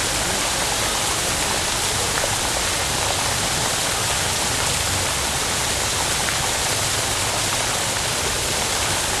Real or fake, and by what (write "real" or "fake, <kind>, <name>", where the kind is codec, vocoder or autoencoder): real